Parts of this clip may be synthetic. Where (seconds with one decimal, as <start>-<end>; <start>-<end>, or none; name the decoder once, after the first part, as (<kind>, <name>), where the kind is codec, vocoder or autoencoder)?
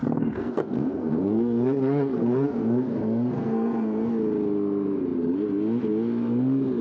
0.0-4.1 (codec, SNAC)